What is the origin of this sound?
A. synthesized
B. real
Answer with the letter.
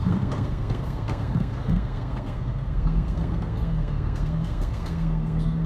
A